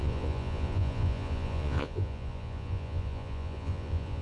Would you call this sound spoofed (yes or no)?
yes